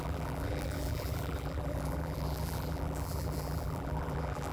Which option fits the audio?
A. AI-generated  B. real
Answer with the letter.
A